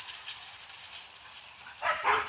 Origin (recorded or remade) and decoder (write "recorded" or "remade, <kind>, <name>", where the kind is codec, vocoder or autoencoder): remade, vocoder, BigVGAN v2